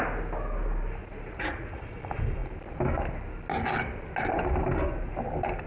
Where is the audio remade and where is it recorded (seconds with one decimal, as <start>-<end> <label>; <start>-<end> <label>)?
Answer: 0.0-1.0 recorded; 1.0-2.0 remade; 2.0-5.7 recorded